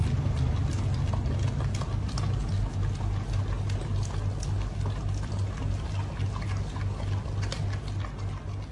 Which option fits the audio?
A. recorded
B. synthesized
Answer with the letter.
A